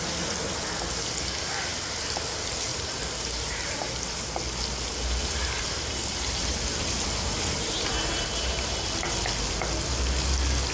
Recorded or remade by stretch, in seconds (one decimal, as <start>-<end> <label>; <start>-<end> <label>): 0.0-2.7 recorded; 2.7-3.9 remade; 3.9-5.2 recorded; 5.2-8.8 remade; 8.8-10.7 recorded

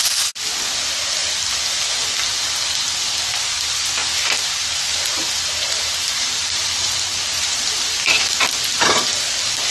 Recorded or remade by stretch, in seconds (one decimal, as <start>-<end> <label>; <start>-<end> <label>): 0.0-4.0 recorded; 4.0-8.5 remade; 8.5-9.7 recorded

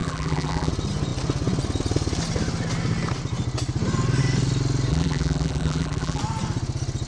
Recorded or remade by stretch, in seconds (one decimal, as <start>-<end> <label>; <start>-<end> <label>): 0.0-0.7 remade; 0.7-4.9 recorded; 4.9-6.2 remade; 6.2-7.1 recorded

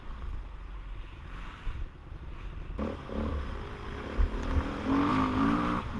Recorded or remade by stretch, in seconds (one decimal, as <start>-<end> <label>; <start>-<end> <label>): 0.0-6.0 recorded